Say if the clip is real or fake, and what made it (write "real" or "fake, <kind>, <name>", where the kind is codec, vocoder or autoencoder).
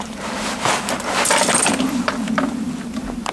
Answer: real